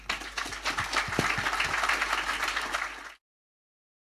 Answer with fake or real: real